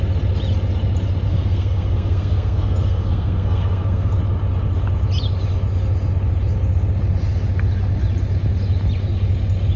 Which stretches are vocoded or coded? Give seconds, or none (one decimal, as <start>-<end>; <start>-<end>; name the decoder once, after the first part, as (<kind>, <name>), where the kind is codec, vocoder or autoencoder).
1.3-4.2 (codec, SNAC)